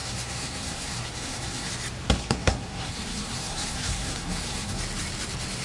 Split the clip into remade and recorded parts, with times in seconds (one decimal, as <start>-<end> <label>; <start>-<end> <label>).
0.0-1.7 remade; 1.7-2.2 recorded; 2.2-4.8 remade; 4.8-5.6 recorded